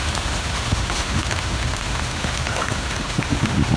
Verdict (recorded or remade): remade